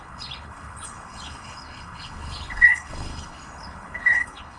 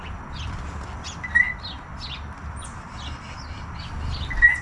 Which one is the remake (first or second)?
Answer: first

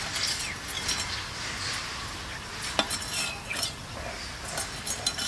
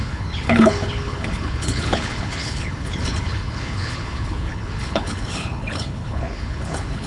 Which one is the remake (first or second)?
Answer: second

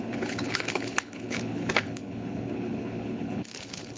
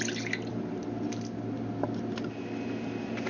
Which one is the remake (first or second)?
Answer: first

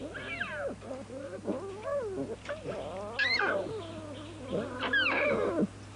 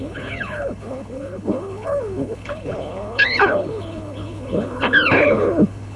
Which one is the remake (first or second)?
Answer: second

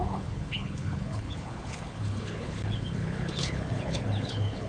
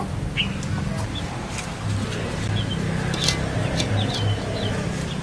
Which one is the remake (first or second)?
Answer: first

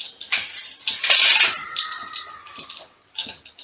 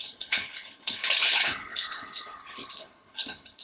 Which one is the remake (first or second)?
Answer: second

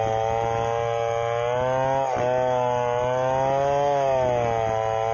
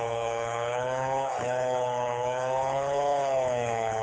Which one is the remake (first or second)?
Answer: second